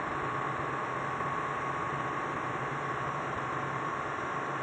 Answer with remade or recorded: recorded